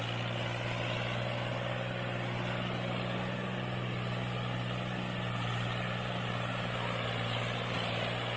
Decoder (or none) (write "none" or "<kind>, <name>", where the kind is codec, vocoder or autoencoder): none